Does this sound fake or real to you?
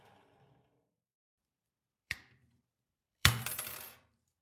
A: fake